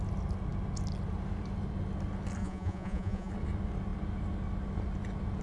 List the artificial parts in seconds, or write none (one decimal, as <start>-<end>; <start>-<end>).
2.4-3.3